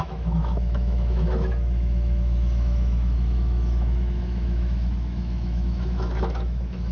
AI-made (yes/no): yes